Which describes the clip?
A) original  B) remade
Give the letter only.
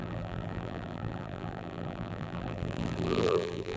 B